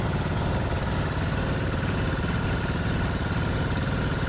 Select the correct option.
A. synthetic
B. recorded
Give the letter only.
B